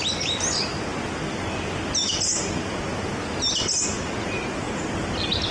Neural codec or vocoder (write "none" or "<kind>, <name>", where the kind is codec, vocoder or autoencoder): none